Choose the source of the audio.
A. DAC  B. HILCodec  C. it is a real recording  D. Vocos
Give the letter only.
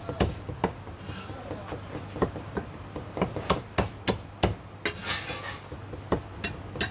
C